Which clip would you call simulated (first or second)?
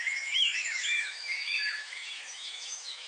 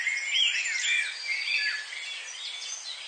first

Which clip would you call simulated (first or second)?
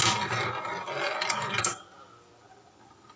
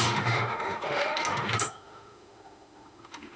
second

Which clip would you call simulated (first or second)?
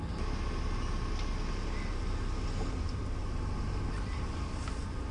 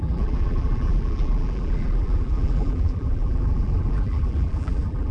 second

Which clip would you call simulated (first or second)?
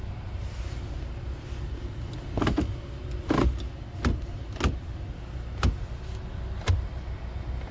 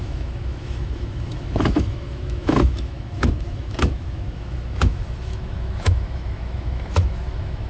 second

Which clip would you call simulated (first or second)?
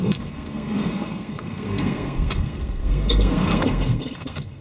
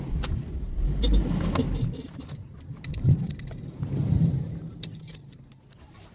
first